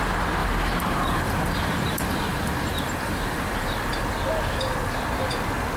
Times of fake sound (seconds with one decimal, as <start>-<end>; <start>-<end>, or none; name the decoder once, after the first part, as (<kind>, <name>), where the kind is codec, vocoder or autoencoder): 0.4-3.9 (vocoder, BigVGAN v2)